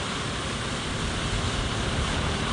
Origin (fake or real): real